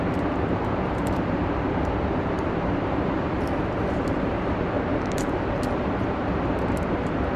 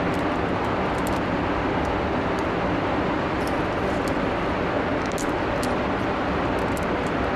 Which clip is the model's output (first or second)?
first